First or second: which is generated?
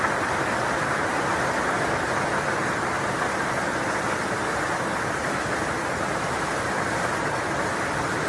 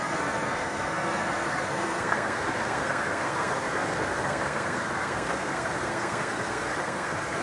second